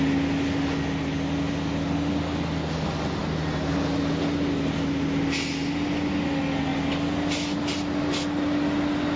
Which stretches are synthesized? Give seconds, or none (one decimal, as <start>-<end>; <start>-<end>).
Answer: none